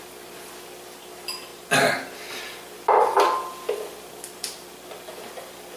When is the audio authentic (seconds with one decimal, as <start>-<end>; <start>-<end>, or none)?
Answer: 0.0-5.8